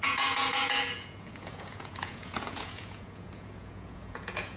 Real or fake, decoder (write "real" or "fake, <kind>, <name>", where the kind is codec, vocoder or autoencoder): fake, vocoder, Vocos